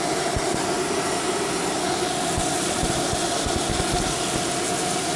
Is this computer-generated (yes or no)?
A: no